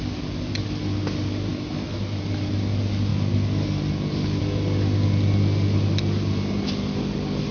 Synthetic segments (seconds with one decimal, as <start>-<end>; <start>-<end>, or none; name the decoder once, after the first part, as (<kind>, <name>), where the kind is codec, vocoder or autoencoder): 1.5-2.2 (autoencoder, DAC-VAE)